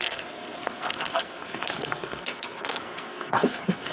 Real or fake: fake